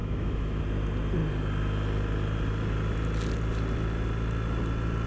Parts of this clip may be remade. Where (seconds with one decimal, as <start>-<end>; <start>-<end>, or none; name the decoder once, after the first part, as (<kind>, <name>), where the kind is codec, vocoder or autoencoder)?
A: 0.0-0.6 (autoencoder, DAC-VAE)